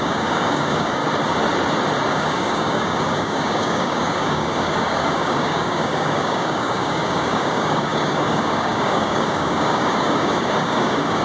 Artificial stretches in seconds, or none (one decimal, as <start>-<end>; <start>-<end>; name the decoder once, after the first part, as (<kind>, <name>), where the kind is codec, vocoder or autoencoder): 0.0-1.0 (codec, DAC); 2.1-11.2